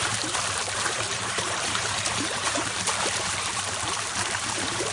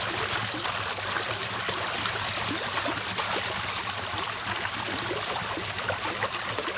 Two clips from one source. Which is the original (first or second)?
second